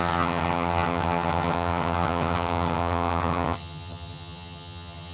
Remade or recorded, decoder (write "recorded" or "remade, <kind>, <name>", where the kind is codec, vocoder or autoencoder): remade, vocoder, HiFi-GAN